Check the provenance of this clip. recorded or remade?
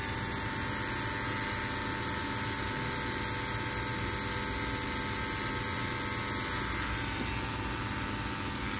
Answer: recorded